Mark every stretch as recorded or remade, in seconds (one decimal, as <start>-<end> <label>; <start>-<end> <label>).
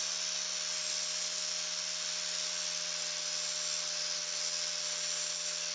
0.0-5.7 recorded